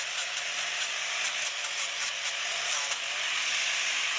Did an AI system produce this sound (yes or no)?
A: no